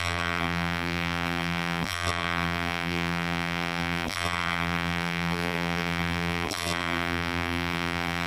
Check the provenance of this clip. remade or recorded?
remade